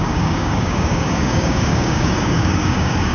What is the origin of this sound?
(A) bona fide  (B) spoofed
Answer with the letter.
B